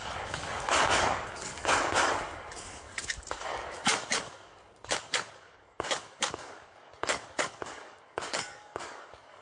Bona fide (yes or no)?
no